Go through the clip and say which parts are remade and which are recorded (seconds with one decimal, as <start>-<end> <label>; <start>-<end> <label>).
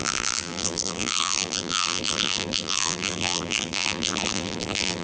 0.0-5.0 remade